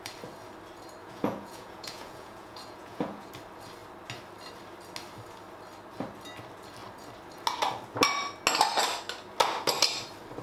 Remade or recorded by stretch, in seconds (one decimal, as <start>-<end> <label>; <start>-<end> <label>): 0.0-1.0 recorded; 1.0-3.3 remade; 3.3-10.4 recorded